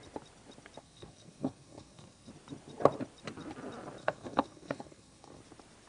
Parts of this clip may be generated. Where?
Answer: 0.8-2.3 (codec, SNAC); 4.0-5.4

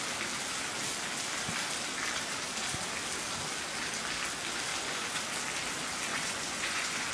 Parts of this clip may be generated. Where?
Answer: 4.7-5.2 (vocoder, Vocos); 6.1-7.1